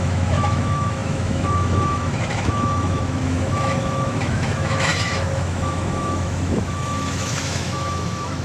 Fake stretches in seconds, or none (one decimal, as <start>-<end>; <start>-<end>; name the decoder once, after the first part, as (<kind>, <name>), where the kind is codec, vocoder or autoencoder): 0.0-8.4 (autoencoder, DAC-VAE)